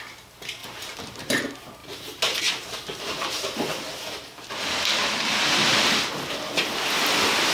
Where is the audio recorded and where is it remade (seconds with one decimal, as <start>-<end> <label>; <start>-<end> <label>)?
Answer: 0.0-0.6 recorded; 0.6-1.4 remade; 1.4-1.8 recorded; 1.8-2.4 remade; 2.4-7.5 recorded